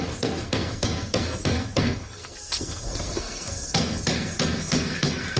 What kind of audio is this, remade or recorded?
remade